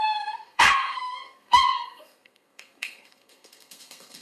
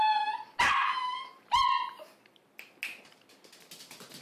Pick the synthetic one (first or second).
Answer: first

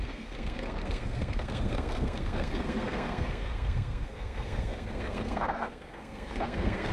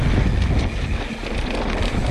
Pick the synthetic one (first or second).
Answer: first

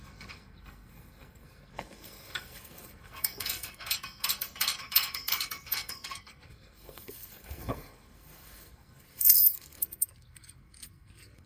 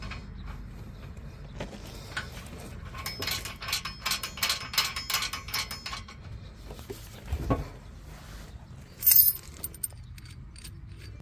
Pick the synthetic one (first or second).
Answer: first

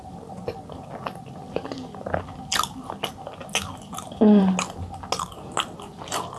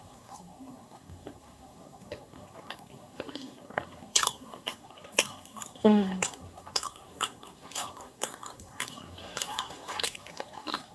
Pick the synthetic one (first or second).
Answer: second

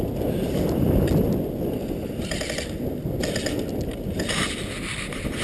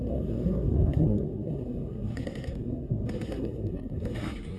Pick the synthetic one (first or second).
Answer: second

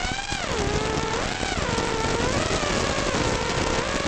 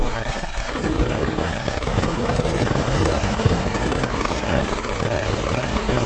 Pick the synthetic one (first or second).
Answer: second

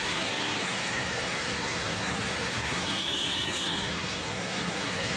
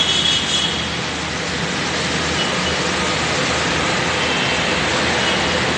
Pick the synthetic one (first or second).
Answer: first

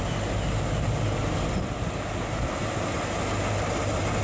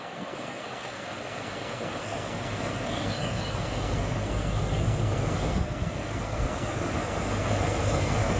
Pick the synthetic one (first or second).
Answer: second